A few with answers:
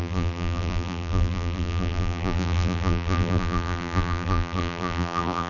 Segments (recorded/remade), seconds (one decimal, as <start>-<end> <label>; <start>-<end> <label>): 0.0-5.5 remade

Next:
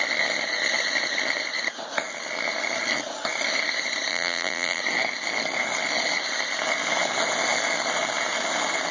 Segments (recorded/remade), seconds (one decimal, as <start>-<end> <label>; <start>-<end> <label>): 0.0-4.1 recorded; 4.1-4.8 remade; 4.8-8.9 recorded

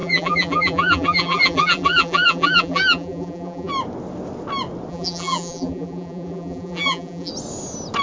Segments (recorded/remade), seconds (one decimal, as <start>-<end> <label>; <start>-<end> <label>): 0.0-3.7 remade; 3.7-4.9 recorded; 4.9-7.3 remade; 7.3-8.0 recorded